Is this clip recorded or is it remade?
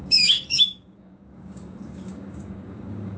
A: remade